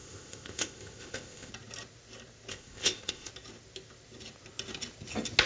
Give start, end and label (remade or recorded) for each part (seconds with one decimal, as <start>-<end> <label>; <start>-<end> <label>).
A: 0.0-1.5 remade; 1.5-2.5 recorded; 2.5-3.3 remade; 3.3-5.5 recorded